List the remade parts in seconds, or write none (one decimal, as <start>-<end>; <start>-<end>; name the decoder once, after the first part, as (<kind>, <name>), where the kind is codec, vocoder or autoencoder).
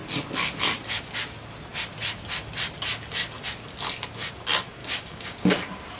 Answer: 4.8-5.5 (codec, DAC)